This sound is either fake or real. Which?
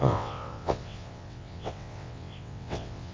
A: fake